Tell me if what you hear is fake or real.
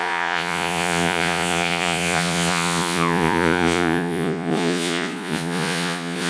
fake